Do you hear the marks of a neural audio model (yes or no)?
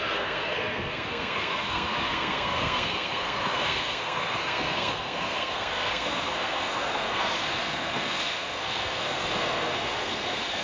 yes